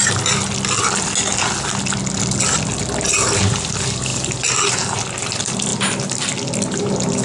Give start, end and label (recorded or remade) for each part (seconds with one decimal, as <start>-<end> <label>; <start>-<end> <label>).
0.0-7.2 recorded